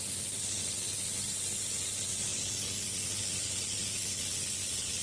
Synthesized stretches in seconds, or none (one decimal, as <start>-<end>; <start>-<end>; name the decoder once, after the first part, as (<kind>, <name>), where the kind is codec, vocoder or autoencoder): none